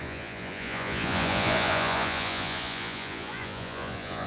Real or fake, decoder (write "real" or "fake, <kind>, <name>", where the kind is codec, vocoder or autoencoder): fake, vocoder, Vocos